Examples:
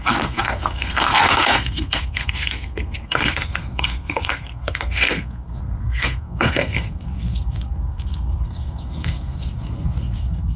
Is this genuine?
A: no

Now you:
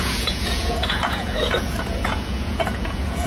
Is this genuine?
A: no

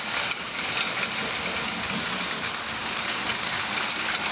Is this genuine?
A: yes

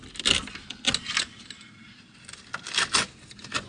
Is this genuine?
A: yes